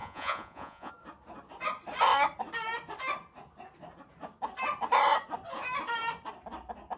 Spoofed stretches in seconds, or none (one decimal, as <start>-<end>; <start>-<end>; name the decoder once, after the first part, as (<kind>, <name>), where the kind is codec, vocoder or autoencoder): 0.0-0.9 (vocoder, Vocos)